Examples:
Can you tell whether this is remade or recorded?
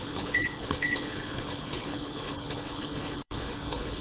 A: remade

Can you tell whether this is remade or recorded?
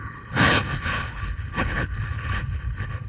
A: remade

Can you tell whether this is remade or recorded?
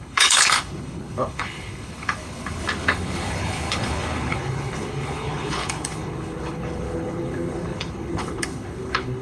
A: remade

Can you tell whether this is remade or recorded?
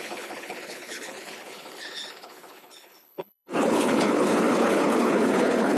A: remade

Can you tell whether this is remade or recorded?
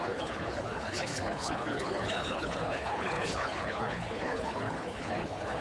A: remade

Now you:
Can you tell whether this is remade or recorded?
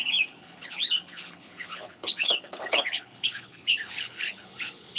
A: remade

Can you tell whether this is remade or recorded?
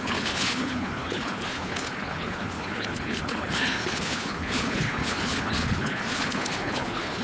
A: remade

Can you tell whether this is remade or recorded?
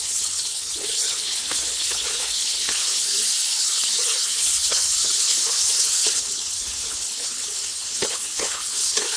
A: remade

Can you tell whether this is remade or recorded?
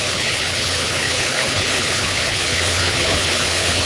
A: remade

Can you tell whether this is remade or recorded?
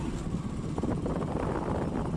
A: recorded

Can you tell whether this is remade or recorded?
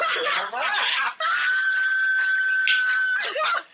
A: recorded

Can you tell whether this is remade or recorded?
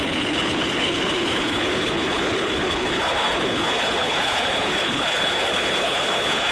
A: remade